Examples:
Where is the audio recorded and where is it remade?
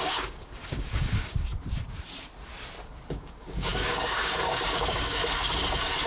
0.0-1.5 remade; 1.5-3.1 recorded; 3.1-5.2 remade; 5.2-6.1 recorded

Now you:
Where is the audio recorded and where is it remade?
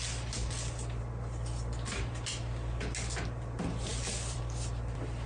0.0-3.9 recorded; 3.9-4.4 remade; 4.4-5.3 recorded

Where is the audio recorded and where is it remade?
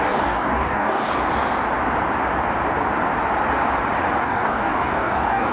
0.0-1.2 remade; 1.2-4.2 recorded; 4.2-5.5 remade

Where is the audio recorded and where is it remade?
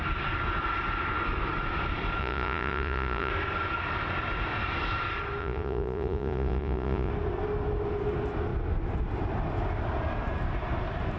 0.0-2.2 recorded; 2.2-3.3 remade; 3.3-5.4 recorded; 5.4-7.1 remade; 7.1-11.2 recorded